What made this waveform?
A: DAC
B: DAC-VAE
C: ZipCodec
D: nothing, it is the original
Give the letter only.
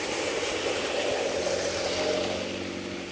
D